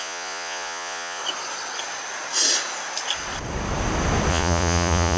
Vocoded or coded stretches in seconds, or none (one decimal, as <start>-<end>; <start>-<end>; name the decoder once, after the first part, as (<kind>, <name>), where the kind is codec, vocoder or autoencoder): 0.0-1.2 (vocoder, Vocos); 4.3-5.2